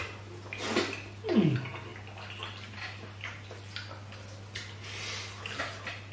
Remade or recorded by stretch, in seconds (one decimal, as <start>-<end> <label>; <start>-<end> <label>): 0.0-6.1 recorded